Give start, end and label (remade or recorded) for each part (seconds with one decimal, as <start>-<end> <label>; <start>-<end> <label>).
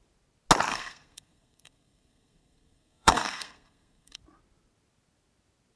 0.0-0.7 recorded; 0.7-4.2 remade; 4.2-5.8 recorded